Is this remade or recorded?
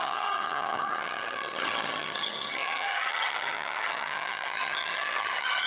remade